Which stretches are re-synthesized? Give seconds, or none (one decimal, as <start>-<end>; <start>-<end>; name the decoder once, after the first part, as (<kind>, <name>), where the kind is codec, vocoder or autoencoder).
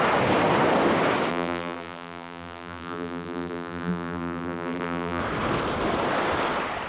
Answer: 1.3-5.2 (vocoder, BigVGAN v2)